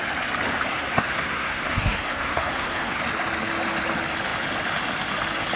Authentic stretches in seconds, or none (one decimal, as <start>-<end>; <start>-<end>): 0.0-0.7; 3.0-5.6